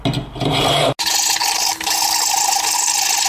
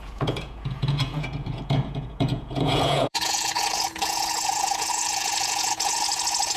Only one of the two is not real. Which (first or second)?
second